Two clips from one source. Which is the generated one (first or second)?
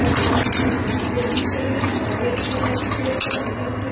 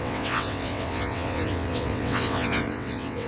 second